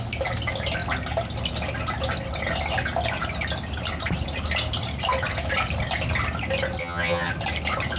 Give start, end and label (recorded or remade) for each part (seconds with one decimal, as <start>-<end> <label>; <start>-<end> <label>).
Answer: 0.0-6.8 recorded; 6.8-7.3 remade; 7.3-8.0 recorded